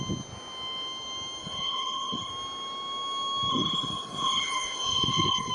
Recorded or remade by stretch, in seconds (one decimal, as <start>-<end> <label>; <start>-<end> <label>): 0.0-1.4 recorded; 1.4-2.3 remade; 2.3-3.5 recorded; 3.5-5.5 remade